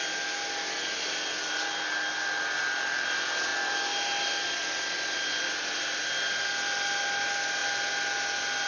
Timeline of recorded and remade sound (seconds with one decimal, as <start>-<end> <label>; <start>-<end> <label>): 0.0-8.7 recorded